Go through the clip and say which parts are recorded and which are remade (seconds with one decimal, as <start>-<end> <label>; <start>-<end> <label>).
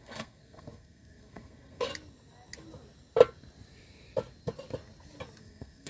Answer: 0.0-1.9 remade; 1.9-5.4 recorded; 5.4-5.9 remade